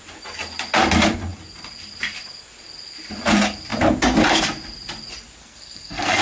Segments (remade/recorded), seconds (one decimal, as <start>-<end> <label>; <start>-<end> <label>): 0.0-5.4 recorded; 5.4-6.2 remade